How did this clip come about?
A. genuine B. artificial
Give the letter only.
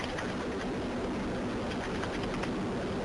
A